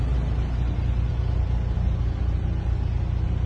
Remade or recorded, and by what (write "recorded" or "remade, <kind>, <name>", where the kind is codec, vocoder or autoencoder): recorded